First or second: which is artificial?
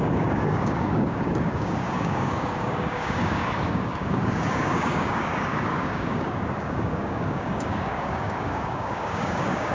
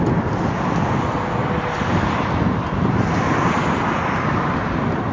first